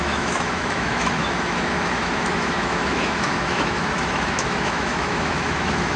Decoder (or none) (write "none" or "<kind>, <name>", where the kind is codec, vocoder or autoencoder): autoencoder, DAC-VAE